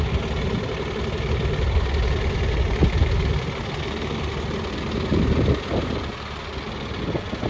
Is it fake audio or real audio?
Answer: real